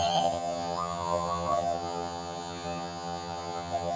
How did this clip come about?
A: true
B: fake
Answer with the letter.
B